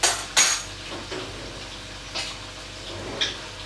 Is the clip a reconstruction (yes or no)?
no